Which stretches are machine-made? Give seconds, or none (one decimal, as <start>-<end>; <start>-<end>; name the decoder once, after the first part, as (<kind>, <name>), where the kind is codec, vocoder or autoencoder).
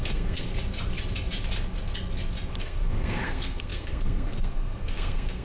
0.0-0.5 (codec, SNAC); 2.6-5.4